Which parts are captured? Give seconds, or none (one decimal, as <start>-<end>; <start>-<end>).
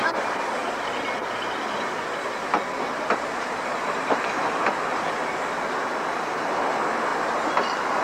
0.0-8.0